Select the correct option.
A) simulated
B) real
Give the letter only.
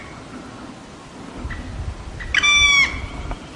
B